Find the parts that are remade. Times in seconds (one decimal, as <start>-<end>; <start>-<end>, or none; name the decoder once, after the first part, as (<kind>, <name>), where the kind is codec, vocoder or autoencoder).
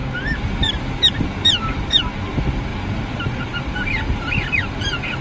none